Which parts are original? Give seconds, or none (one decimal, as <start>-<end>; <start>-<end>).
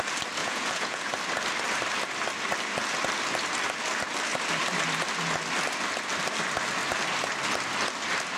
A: 0.0-0.4; 1.1-8.4